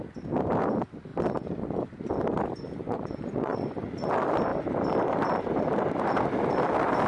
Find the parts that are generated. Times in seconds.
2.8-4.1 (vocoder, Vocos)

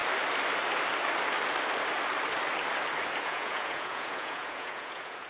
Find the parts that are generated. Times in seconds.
3.2-5.3 (vocoder, Vocos)

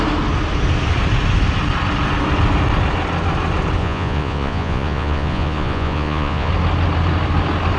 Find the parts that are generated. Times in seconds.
3.8-6.5 (vocoder, Vocos)

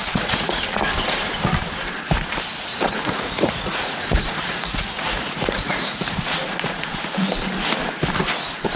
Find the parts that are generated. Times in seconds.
0.0-0.6 (vocoder, Vocos); 2.7-7.0

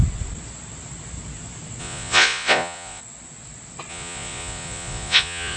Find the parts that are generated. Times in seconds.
1.8-3.0 (vocoder, Vocos); 3.9-5.6